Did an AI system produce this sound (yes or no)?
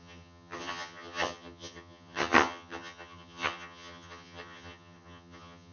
yes